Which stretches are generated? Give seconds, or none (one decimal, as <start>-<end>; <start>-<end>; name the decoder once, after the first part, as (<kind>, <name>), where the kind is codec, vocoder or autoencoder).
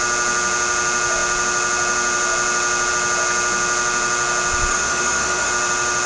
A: 4.7-5.5 (autoencoder, DAC-VAE)